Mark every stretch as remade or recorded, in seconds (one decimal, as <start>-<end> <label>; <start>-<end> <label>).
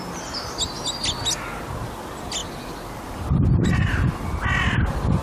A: 0.0-2.4 recorded; 2.4-3.7 remade; 3.7-5.2 recorded